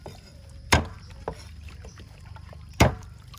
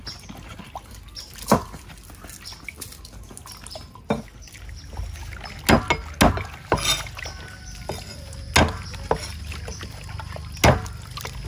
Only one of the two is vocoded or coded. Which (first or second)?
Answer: first